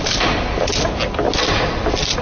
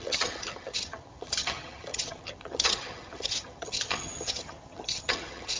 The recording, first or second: first